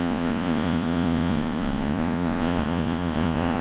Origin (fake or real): fake